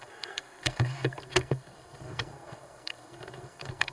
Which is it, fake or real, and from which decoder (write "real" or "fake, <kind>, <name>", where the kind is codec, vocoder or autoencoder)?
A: fake, codec, SNAC